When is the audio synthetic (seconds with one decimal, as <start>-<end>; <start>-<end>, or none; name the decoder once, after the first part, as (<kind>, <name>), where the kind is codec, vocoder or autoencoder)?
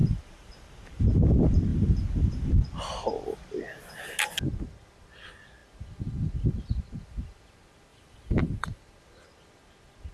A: 0.0-1.1 (vocoder, BigVGAN v2); 1.7-2.5; 7.9-8.8